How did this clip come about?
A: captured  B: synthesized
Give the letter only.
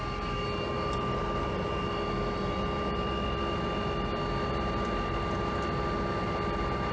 A